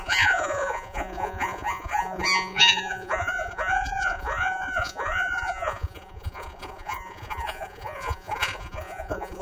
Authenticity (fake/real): fake